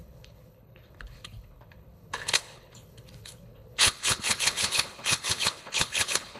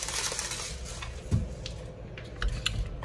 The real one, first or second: second